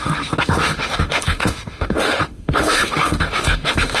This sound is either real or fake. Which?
fake